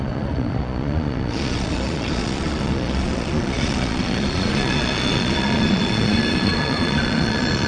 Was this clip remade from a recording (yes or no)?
yes